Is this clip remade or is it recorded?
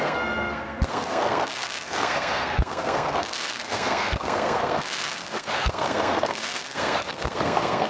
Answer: remade